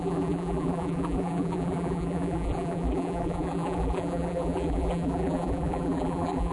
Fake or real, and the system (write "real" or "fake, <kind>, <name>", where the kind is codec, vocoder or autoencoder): fake, vocoder, BigVGAN v2